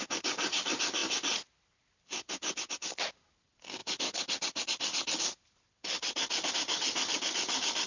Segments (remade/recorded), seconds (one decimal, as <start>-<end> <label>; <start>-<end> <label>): 0.0-7.9 recorded